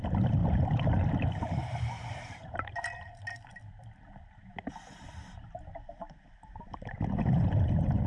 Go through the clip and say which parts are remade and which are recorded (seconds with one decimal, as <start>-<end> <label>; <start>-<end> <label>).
0.0-8.1 recorded